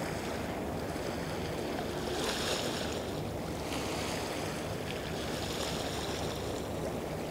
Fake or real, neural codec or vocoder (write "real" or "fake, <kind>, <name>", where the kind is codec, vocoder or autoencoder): real